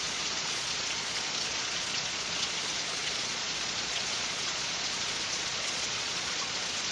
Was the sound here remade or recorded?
remade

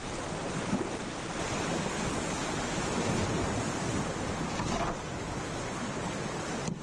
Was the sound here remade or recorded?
recorded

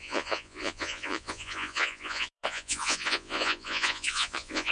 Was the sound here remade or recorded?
remade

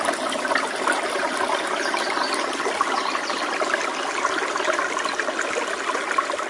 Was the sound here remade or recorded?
recorded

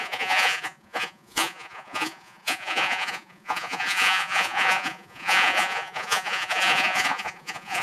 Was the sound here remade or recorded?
remade